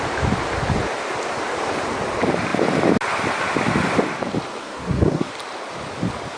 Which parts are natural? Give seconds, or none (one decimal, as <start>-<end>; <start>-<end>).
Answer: 0.0-4.6; 5.3-6.4